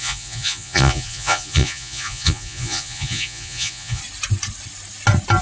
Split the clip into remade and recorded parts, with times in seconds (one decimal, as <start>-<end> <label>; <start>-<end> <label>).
0.0-4.0 remade; 4.0-5.4 recorded